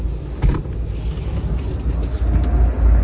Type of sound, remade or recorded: recorded